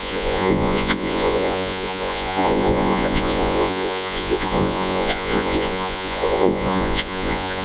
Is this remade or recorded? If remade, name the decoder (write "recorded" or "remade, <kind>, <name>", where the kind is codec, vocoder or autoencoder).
remade, vocoder, Vocos